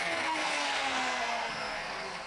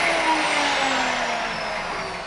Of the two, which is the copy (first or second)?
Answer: first